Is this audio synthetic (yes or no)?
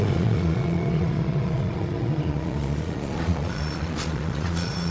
yes